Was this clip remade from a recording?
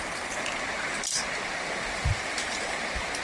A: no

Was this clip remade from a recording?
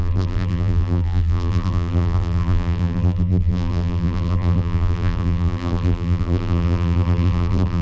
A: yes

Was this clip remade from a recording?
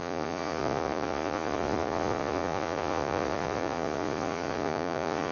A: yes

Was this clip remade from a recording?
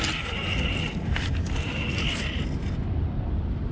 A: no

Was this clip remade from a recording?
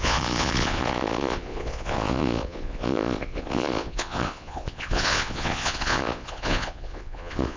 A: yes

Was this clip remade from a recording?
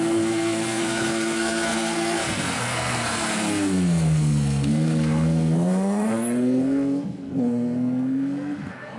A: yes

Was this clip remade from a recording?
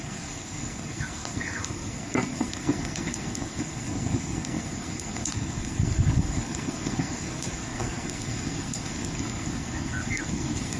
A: yes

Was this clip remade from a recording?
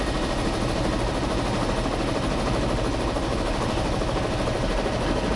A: no